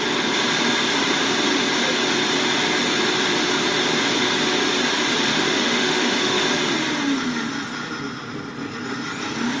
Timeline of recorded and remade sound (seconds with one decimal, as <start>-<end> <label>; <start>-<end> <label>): 0.0-5.3 recorded; 5.3-6.4 remade; 6.4-9.6 recorded